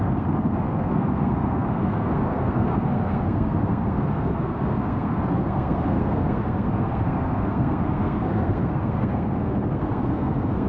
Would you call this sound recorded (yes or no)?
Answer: no